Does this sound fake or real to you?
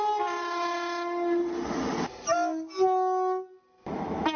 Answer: real